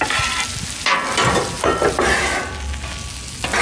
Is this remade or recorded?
recorded